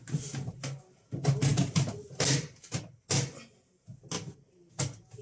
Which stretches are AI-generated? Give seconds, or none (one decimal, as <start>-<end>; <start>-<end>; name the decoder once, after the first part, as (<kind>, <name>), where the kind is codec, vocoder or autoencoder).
none